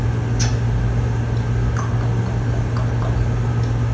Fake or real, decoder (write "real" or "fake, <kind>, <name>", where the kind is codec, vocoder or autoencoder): real